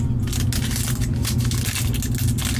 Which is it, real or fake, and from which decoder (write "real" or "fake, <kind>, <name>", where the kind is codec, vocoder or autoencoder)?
real